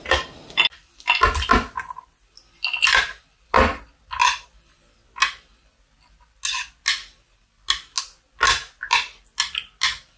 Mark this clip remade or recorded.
recorded